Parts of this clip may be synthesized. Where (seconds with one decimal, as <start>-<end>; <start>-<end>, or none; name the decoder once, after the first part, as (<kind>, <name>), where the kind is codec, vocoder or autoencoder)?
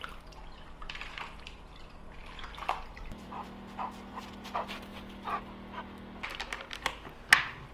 0.0-4.9 (vocoder, BigVGAN v2)